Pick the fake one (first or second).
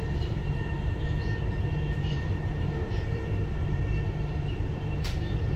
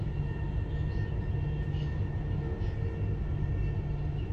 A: first